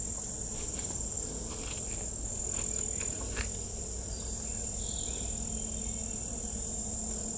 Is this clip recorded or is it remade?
recorded